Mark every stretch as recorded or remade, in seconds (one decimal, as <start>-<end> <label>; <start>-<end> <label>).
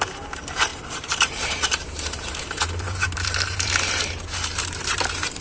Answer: 0.0-5.4 remade